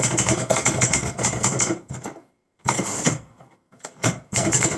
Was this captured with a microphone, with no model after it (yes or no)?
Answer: no